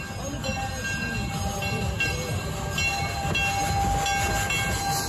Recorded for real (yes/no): yes